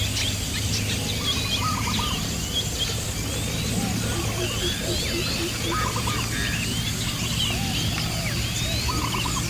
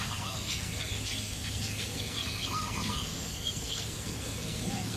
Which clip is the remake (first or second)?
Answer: second